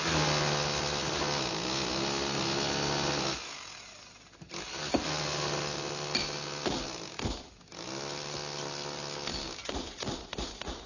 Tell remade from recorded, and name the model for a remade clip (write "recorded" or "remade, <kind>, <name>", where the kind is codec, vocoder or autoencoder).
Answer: recorded